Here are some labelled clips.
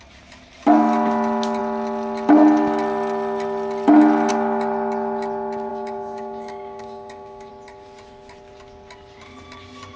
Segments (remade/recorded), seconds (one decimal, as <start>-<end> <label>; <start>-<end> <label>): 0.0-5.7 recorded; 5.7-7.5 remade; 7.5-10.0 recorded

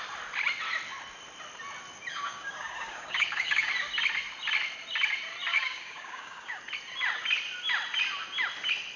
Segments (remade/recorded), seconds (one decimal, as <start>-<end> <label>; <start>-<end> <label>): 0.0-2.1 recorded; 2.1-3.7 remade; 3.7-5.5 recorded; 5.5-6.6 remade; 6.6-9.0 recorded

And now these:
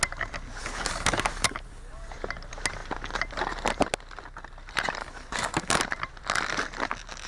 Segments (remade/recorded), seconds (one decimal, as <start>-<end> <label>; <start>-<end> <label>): 0.0-0.6 recorded; 0.6-2.1 remade; 2.1-5.0 recorded; 5.0-5.8 remade; 5.8-7.3 recorded

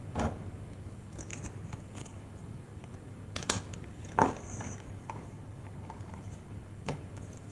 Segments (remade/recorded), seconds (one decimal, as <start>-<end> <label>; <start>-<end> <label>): 0.0-1.3 remade; 1.3-1.8 recorded; 1.8-7.5 remade